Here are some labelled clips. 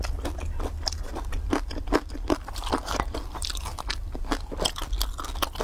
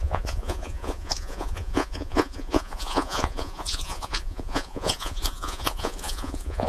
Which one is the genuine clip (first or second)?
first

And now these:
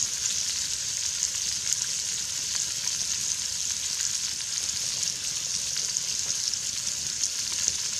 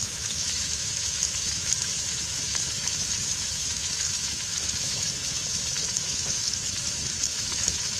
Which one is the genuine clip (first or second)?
first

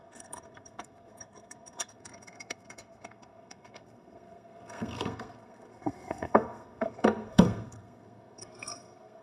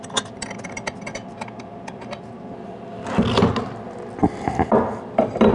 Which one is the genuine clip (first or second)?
second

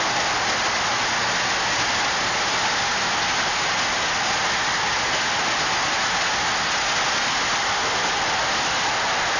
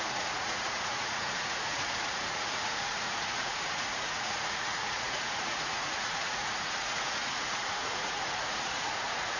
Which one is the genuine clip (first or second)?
first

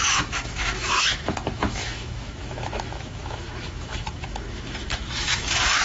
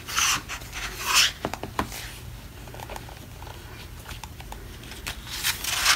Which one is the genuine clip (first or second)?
second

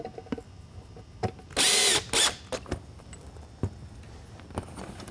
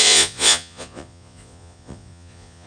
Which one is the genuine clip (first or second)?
first